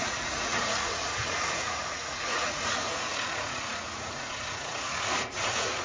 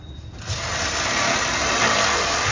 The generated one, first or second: first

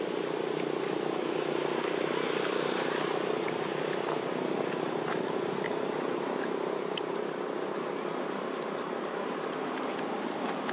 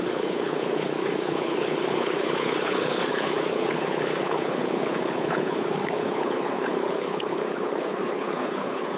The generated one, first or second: second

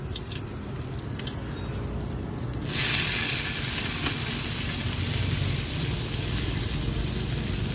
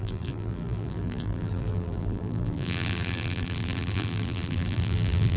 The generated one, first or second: second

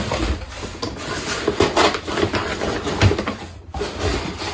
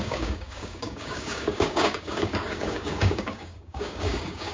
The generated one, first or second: second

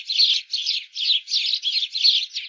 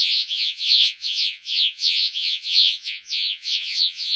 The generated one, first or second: second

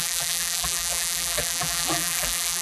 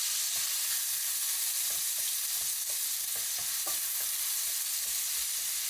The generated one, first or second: first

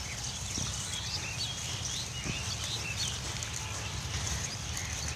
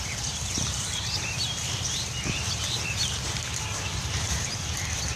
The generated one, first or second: second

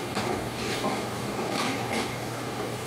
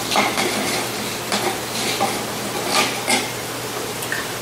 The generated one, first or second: first